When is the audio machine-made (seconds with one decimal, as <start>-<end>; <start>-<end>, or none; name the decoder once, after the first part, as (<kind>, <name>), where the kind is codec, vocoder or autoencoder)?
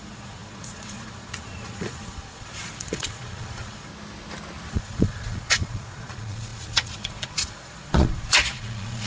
0.0-3.9 (vocoder, Vocos); 4.7-9.1